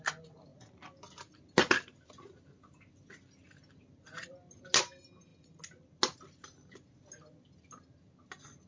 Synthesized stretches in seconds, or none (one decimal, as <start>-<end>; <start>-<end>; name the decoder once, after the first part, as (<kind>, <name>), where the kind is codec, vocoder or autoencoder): none